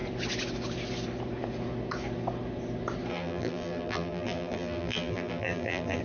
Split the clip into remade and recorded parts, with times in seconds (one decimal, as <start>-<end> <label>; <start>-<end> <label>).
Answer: 0.0-3.1 recorded; 3.1-6.0 remade